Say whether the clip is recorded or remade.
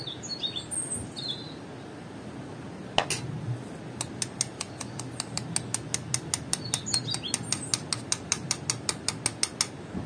recorded